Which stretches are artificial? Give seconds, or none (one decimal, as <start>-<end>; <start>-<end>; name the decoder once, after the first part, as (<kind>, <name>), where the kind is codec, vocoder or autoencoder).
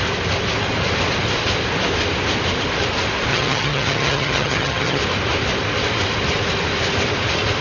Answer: 3.3-5.0 (vocoder, HiFi-GAN)